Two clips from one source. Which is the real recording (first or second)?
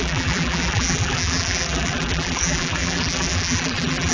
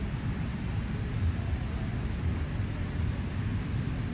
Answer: second